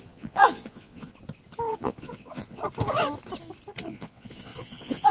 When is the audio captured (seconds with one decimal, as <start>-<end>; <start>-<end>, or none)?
1.1-1.7; 2.6-3.8